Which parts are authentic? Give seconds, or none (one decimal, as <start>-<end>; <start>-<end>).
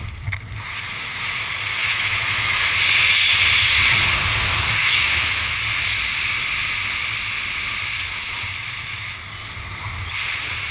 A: 0.0-1.8; 2.8-4.8; 5.6-10.7